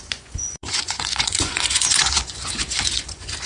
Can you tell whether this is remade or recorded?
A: remade